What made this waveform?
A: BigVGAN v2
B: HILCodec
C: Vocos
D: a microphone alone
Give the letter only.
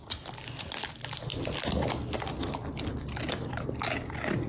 D